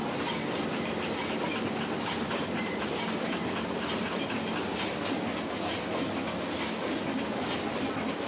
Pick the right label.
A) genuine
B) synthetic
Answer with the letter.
A